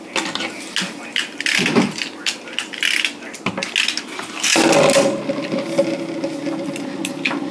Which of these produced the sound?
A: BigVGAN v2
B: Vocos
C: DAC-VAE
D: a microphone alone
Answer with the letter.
D